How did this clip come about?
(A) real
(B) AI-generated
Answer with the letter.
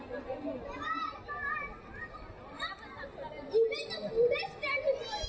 A